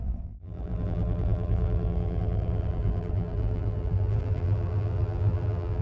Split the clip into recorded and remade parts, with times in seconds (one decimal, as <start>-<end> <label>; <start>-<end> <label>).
0.0-5.8 remade